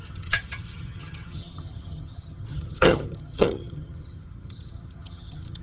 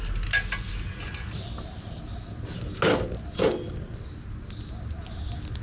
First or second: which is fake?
first